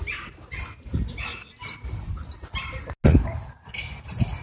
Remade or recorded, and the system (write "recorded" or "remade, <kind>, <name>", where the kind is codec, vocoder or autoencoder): recorded